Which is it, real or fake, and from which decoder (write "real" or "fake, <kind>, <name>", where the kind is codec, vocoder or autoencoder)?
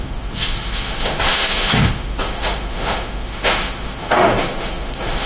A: fake, autoencoder, DAC-VAE